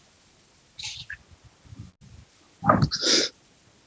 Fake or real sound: real